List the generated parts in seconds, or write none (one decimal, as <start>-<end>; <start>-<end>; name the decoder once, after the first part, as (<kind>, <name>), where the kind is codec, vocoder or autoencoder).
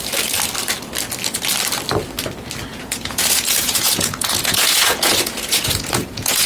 2.7-6.5 (vocoder, Vocos)